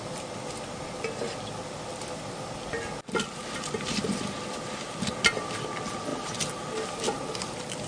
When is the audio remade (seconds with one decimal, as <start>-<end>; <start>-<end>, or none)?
none